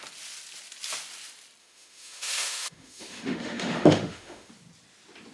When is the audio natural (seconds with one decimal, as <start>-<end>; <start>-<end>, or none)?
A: 0.0-1.6; 4.5-5.3